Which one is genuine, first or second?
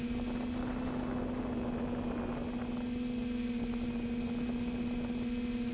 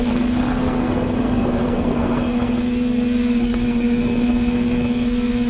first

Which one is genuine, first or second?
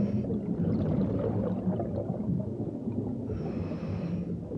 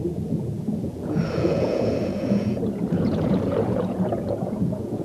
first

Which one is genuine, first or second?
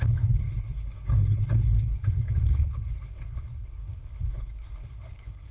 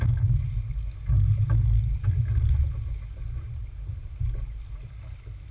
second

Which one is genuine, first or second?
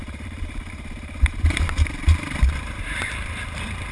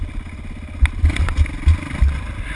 second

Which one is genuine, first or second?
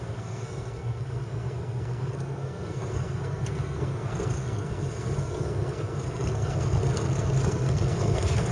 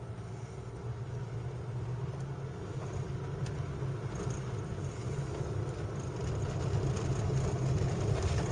second